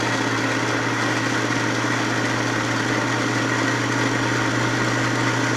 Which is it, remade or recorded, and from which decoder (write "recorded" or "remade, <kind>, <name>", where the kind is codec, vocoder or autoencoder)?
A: recorded